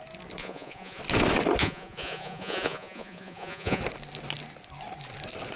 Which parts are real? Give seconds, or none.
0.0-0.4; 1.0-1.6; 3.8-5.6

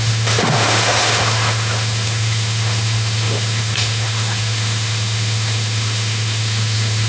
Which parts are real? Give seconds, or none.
none

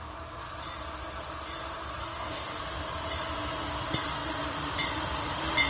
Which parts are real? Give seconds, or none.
0.0-2.0; 2.6-5.7

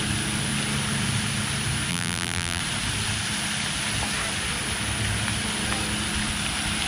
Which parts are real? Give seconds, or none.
0.0-1.9; 2.6-6.9